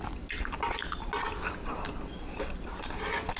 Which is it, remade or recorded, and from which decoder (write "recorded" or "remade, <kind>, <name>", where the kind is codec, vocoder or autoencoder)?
recorded